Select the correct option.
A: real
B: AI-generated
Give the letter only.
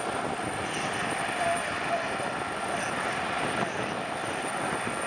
A